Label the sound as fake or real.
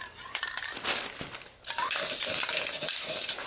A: real